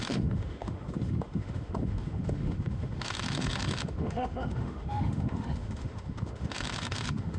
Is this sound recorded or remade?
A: remade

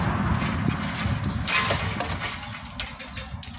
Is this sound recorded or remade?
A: recorded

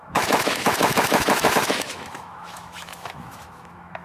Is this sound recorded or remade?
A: remade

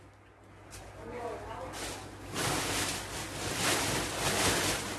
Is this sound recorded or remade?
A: recorded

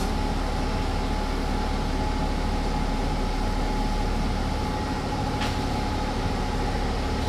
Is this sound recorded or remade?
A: recorded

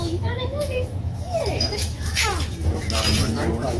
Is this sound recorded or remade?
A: remade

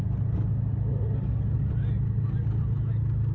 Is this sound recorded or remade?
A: recorded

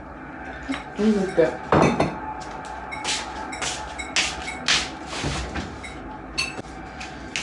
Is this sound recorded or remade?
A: recorded